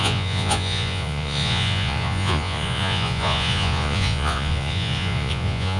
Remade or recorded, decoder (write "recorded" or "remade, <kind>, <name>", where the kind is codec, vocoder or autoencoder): remade, vocoder, Vocos